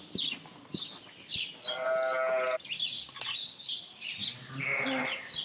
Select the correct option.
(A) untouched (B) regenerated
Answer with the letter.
A